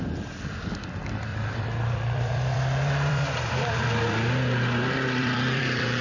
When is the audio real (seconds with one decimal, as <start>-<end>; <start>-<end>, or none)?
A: 0.0-1.3; 4.3-5.2